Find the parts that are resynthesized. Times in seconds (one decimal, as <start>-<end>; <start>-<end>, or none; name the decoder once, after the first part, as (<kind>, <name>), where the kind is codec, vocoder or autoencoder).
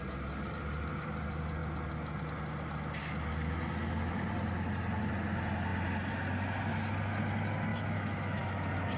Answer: 7.7-8.4 (autoencoder, DAC-VAE)